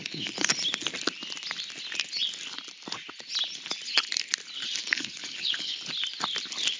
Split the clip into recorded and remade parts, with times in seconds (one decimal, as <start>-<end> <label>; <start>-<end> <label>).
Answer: 0.0-0.5 remade; 0.5-4.8 recorded; 4.8-5.8 remade; 5.8-6.8 recorded